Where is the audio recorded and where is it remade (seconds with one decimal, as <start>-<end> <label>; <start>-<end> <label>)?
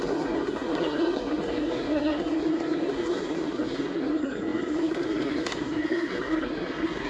0.0-7.1 remade